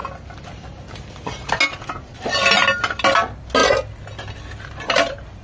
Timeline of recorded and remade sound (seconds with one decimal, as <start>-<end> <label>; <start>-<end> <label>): 0.0-5.4 recorded